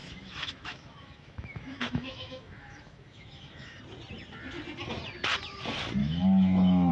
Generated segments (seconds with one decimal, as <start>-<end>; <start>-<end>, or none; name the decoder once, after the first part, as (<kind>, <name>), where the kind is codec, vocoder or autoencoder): 0.0-3.8 (autoencoder, DAC-VAE); 6.0-6.9